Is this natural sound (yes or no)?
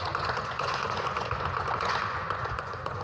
no